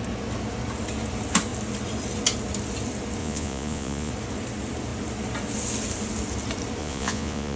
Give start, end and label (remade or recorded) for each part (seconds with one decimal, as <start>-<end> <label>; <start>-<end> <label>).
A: 0.0-3.2 recorded; 3.2-4.1 remade; 4.1-6.8 recorded; 6.8-7.6 remade